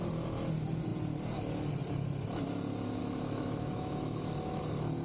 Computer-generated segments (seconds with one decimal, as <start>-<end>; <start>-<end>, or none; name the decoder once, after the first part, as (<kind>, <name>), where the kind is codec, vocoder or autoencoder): 3.0-4.6 (autoencoder, DAC-VAE)